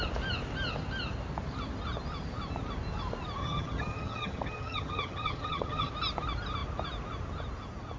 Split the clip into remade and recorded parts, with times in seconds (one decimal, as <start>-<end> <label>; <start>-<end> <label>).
0.0-3.4 recorded; 3.4-5.9 remade; 5.9-8.0 recorded